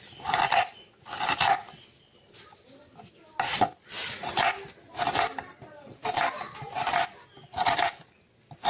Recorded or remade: recorded